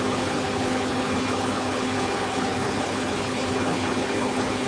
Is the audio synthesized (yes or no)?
yes